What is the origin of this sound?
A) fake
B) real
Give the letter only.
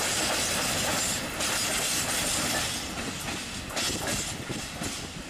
B